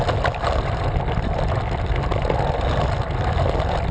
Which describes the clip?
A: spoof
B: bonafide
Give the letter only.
B